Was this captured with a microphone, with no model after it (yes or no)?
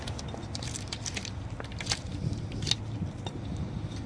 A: yes